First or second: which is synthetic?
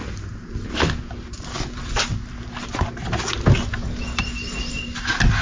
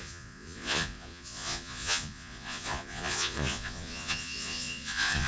second